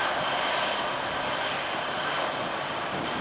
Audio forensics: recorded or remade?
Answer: recorded